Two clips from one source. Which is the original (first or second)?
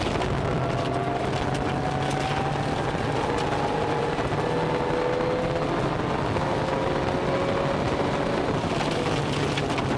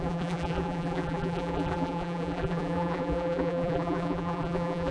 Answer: first